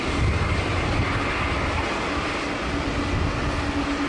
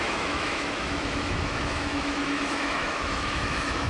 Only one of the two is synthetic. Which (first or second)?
second